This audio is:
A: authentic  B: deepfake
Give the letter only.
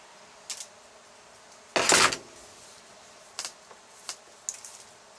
A